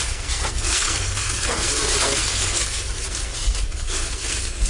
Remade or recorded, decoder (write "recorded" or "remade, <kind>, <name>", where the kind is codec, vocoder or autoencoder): remade, codec, SNAC